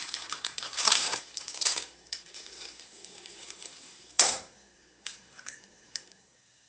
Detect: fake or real fake